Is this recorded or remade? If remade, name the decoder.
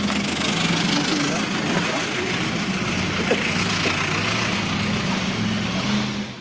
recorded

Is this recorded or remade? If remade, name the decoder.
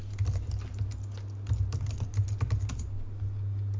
recorded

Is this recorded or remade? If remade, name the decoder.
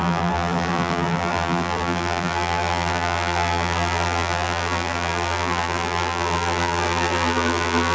remade, vocoder, BigVGAN v2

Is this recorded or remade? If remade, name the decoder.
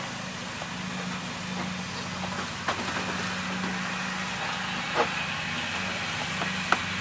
recorded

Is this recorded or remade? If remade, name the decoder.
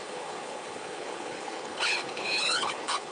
remade, codec, HILCodec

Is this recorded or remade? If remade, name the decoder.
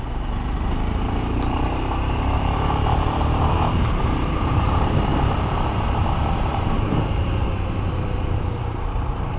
remade, vocoder, BigVGAN v2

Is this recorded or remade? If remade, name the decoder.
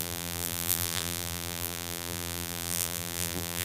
remade, vocoder, BigVGAN v2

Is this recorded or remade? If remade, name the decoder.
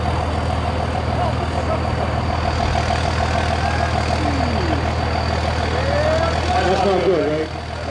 recorded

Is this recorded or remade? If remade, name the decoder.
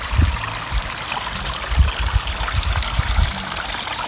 recorded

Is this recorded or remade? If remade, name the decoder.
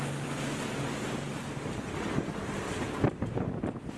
recorded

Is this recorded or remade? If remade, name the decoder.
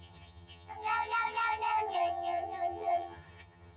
remade, vocoder, HiFi-GAN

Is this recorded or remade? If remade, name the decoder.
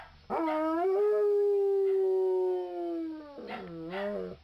recorded